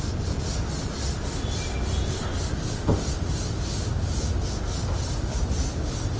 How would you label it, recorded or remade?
recorded